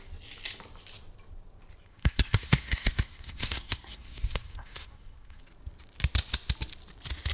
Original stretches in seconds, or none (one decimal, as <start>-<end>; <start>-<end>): 0.0-1.9; 5.4-7.3